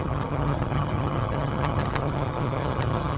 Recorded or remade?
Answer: remade